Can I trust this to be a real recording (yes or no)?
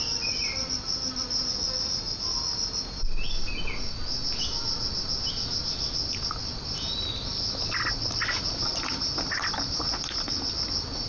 yes